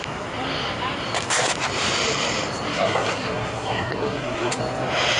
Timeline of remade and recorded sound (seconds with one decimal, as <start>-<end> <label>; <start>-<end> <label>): 0.0-2.7 recorded; 2.7-4.6 remade; 4.6-5.2 recorded